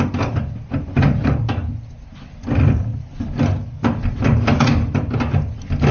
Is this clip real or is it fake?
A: real